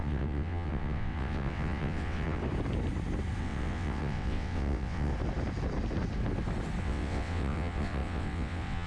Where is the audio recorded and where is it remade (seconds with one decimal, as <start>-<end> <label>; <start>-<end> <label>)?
0.0-2.4 remade; 2.4-3.4 recorded; 3.4-5.1 remade; 5.1-6.8 recorded; 6.8-8.9 remade

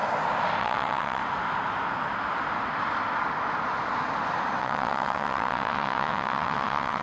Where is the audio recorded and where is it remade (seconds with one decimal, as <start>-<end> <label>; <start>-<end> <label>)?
0.0-0.6 recorded; 0.6-1.2 remade; 1.2-4.6 recorded; 4.6-7.0 remade

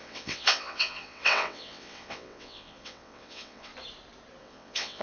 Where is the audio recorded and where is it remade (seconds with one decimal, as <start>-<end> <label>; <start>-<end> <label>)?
0.0-3.7 remade; 3.7-4.4 recorded; 4.4-5.0 remade

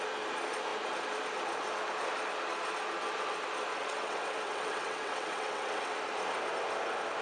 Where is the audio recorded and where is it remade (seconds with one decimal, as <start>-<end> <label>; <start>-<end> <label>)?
0.0-3.7 recorded; 3.7-6.0 remade; 6.0-7.2 recorded

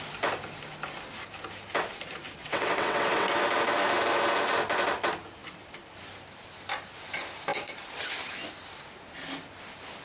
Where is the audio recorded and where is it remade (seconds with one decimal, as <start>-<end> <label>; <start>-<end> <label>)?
0.0-2.4 recorded; 2.4-3.3 remade; 3.3-10.0 recorded

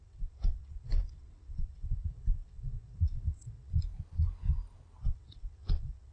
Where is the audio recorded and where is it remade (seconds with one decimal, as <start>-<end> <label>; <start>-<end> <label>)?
0.0-3.7 remade; 3.7-5.0 recorded; 5.0-6.1 remade

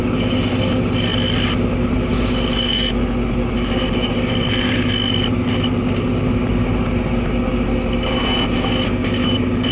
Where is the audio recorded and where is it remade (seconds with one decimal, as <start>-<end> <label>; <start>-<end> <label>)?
0.0-9.7 recorded

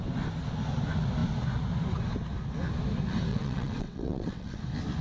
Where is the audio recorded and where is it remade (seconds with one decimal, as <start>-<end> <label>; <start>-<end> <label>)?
0.0-3.3 recorded; 3.3-4.6 remade; 4.6-5.0 recorded